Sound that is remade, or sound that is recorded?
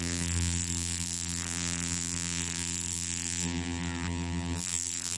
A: remade